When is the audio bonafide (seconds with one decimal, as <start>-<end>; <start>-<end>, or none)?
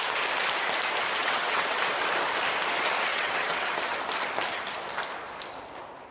0.0-1.2; 1.8-3.1; 3.7-6.1